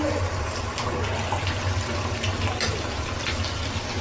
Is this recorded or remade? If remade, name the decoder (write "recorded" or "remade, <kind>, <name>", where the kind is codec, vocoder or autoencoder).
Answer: recorded